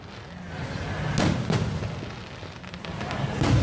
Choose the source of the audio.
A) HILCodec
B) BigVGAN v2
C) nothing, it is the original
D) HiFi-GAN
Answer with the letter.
C